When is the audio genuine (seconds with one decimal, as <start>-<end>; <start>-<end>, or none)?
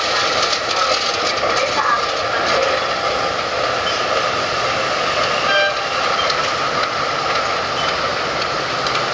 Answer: 0.0-9.1